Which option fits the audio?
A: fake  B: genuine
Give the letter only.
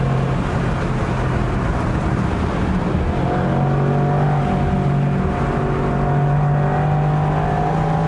B